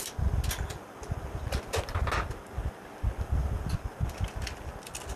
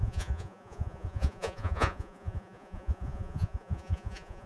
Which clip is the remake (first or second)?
second